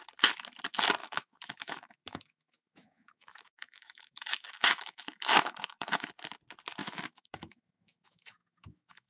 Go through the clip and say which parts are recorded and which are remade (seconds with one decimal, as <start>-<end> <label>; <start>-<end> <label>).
0.0-1.0 recorded; 1.0-6.1 remade; 6.1-6.8 recorded; 6.8-9.1 remade